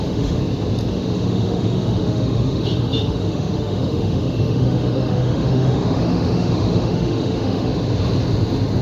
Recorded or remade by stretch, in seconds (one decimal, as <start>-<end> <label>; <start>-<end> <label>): 0.0-0.4 remade; 0.4-0.9 recorded; 0.9-7.7 remade; 7.7-8.8 recorded